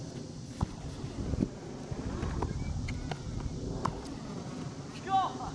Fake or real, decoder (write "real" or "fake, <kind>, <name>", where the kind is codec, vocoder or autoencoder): real